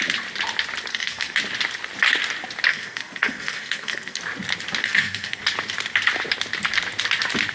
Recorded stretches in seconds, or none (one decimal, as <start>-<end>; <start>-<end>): 0.0-0.9; 1.4-2.7; 4.2-4.8; 5.4-7.5